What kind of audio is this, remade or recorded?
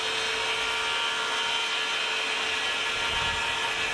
recorded